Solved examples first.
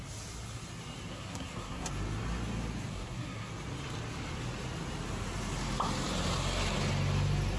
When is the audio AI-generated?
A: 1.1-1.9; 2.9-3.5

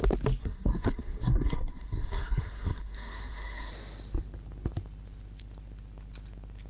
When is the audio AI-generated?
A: 0.4-3.7

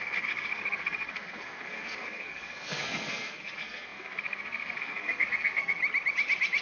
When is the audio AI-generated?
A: 0.0-5.8

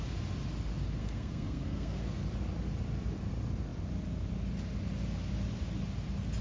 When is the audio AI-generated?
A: 1.0-2.2

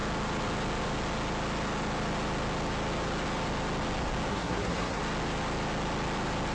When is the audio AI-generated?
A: 4.3-5.0